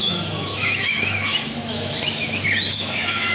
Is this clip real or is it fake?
fake